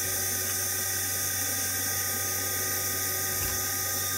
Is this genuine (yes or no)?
yes